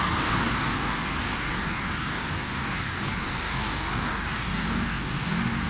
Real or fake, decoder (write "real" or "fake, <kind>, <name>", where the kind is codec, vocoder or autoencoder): fake, codec, DAC